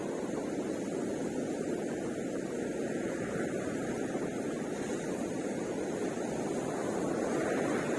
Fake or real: fake